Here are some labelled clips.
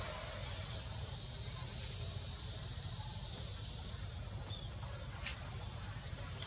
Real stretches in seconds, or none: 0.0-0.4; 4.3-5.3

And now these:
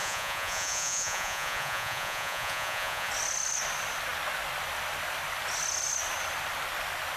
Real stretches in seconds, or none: 3.1-7.2

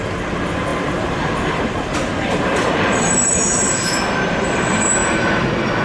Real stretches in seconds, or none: none

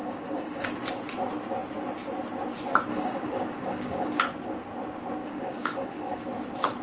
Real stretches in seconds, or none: 0.7-2.9; 4.2-5.2; 6.2-6.8